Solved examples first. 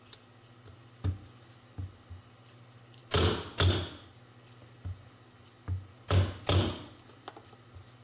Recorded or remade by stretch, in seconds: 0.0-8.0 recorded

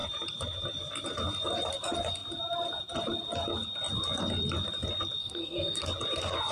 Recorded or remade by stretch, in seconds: 0.0-5.2 recorded; 5.2-5.8 remade; 5.8-6.5 recorded

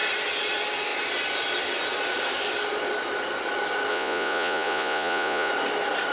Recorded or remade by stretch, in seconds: 0.0-3.9 recorded; 3.9-5.5 remade; 5.5-6.1 recorded

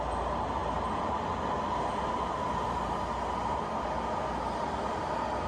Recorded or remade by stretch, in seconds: 0.0-5.5 recorded

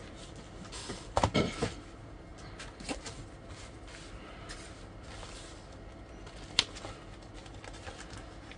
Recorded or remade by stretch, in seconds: 0.0-8.6 recorded

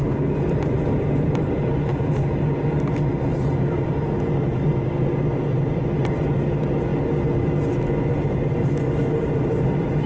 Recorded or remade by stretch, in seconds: 0.0-10.1 recorded

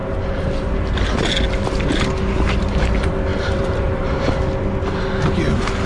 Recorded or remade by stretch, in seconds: 0.0-1.3 remade; 1.3-3.3 recorded; 3.3-4.3 remade; 4.3-5.9 recorded

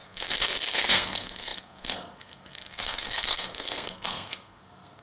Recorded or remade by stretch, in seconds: 0.0-5.0 remade